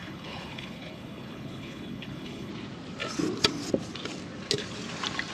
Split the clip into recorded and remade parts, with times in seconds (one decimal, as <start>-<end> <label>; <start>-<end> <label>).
0.0-2.5 remade; 2.5-5.3 recorded